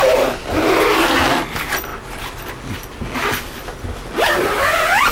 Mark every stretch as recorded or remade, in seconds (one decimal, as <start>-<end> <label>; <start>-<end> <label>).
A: 0.0-5.1 recorded